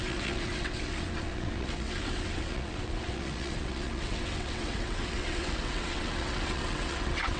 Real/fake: fake